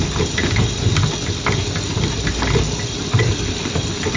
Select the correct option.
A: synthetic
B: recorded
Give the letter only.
B